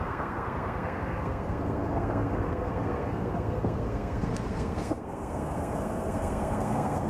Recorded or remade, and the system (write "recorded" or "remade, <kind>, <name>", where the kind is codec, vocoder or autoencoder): remade, codec, SNAC